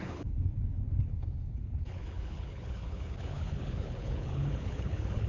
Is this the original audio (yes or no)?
no